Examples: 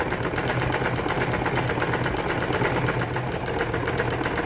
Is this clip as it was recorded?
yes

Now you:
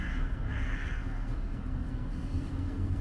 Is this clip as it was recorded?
no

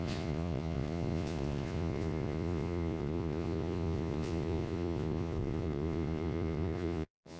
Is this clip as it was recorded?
no